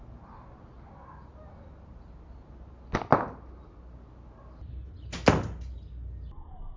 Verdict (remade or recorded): recorded